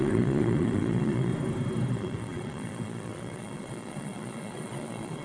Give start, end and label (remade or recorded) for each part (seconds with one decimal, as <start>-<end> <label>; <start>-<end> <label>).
0.0-1.3 remade; 1.3-1.9 recorded; 1.9-5.2 remade